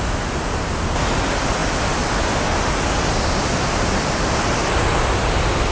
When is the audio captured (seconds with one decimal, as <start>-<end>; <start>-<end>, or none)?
0.0-5.7